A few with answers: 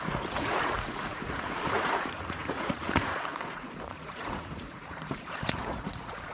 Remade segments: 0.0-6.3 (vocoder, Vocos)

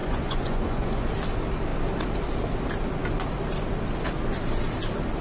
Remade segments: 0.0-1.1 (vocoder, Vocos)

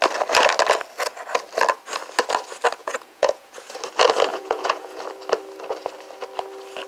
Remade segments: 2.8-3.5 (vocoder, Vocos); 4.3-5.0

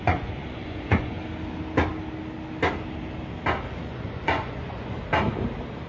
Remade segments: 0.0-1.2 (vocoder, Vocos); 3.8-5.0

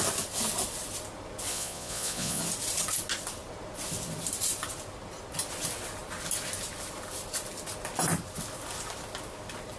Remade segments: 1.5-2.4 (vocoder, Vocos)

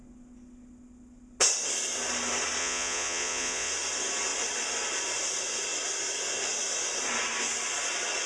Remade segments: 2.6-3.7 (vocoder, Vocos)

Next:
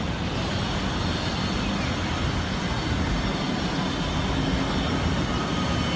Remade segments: none

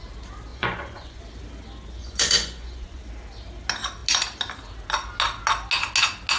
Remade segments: 0.5-1.2 (vocoder, Vocos); 2.0-3.0